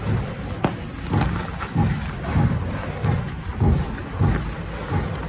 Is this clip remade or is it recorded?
recorded